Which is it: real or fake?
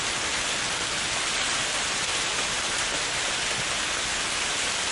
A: real